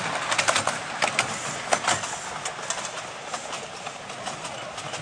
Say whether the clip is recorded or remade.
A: recorded